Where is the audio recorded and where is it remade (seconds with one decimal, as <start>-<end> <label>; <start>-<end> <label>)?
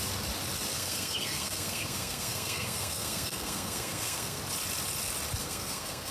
0.0-0.7 recorded; 0.7-4.4 remade; 4.4-5.4 recorded; 5.4-6.1 remade